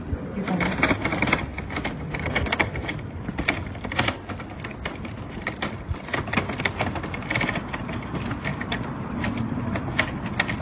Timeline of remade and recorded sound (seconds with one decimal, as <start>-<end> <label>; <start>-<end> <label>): 0.0-1.5 recorded; 1.5-6.6 remade; 6.6-8.5 recorded; 8.5-9.6 remade; 9.6-10.6 recorded